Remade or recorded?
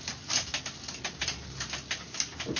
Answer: recorded